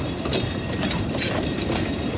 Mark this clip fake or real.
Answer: fake